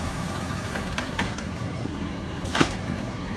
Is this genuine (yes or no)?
no